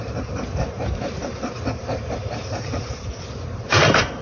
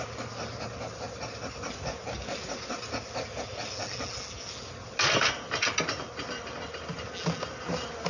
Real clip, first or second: second